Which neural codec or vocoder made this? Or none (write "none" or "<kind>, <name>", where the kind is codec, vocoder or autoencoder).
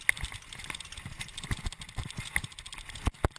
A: none